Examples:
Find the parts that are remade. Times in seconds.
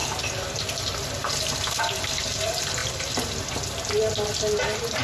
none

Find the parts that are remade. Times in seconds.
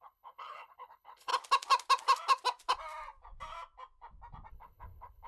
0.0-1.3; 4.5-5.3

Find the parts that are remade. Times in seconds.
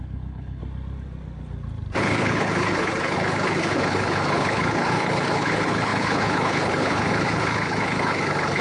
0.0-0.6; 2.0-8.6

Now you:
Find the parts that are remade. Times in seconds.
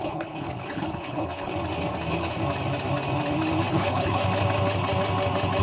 0.0-1.5; 3.7-4.2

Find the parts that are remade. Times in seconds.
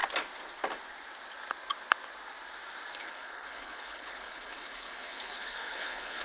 3.0-6.2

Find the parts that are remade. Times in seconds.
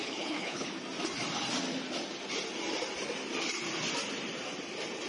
0.0-0.7